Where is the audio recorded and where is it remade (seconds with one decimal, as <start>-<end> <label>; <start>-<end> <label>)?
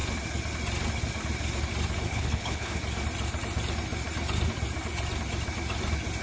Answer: 0.0-2.1 recorded; 2.1-2.8 remade; 2.8-6.2 recorded